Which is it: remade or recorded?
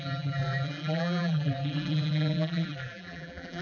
remade